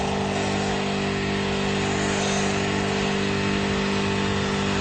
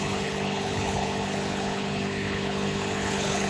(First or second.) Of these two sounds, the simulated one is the second